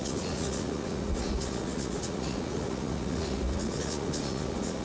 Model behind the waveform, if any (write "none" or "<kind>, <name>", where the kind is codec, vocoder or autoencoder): vocoder, Vocos